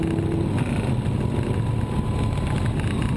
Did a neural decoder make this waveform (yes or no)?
no